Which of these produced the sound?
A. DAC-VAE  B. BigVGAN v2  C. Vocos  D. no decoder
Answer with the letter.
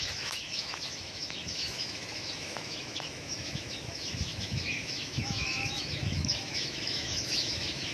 A